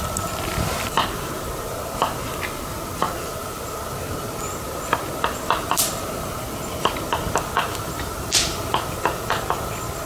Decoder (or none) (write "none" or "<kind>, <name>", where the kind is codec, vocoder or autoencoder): vocoder, BigVGAN v2